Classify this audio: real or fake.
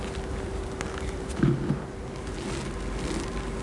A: real